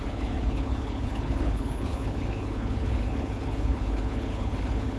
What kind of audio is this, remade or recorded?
remade